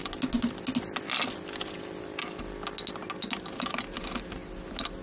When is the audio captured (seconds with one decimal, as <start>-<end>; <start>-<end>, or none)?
0.0-5.0